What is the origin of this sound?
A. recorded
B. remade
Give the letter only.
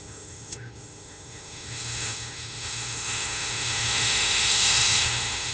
B